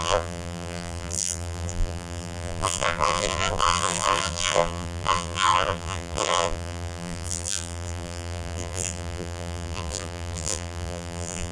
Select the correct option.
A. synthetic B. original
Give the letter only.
A